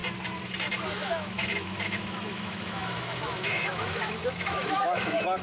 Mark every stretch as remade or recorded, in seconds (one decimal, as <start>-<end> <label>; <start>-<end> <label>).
0.0-0.9 recorded; 0.9-5.4 remade

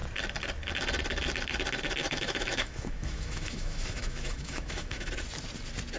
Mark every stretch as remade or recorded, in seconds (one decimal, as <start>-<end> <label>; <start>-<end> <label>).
0.0-2.0 recorded; 2.0-5.1 remade; 5.1-6.0 recorded

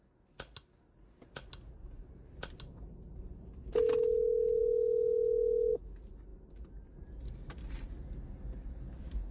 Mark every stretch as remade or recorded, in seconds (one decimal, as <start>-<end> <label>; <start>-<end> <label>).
0.0-9.3 recorded

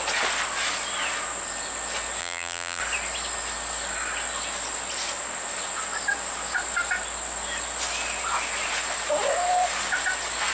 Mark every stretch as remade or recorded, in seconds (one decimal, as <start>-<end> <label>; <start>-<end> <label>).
0.0-2.2 recorded; 2.2-2.8 remade; 2.8-10.5 recorded

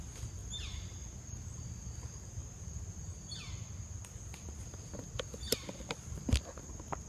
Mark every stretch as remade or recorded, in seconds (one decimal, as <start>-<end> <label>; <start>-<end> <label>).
0.0-7.1 recorded

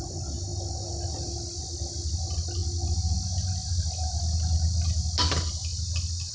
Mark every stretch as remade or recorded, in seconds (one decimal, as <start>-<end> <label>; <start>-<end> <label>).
0.0-6.3 recorded

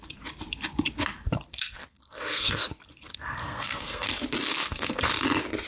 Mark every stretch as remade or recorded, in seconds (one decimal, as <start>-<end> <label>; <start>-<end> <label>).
0.0-1.5 recorded; 1.5-2.6 remade; 2.6-3.1 recorded; 3.1-4.1 remade; 4.1-4.5 recorded; 4.5-5.1 remade; 5.1-5.7 recorded

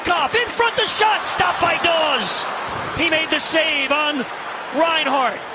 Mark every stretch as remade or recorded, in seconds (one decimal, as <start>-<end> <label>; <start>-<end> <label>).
0.0-2.4 recorded; 2.4-3.0 remade; 3.0-5.5 recorded